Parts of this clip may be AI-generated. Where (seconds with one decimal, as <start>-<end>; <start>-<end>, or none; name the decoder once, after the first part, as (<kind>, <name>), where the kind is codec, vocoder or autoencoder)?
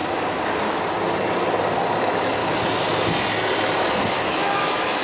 2.0-2.4 (autoencoder, DAC-VAE); 4.1-5.0